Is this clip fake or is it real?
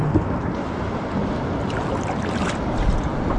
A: real